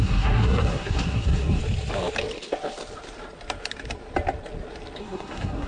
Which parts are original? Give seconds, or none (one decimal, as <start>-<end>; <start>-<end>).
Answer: 1.6-5.0